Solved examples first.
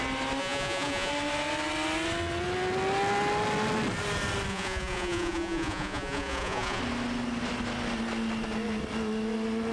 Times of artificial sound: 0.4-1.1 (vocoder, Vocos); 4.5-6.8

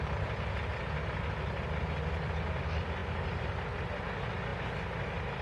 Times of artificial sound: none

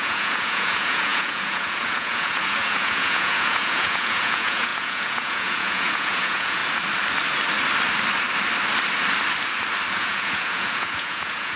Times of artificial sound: 0.0-6.6 (vocoder, Vocos); 9.9-11.6

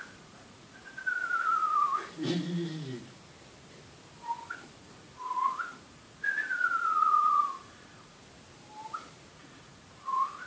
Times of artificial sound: 0.0-1.2 (vocoder, Vocos); 4.8-8.2; 9.3-10.5

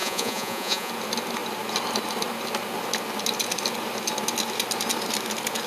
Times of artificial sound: 0.0-0.9 (vocoder, Vocos)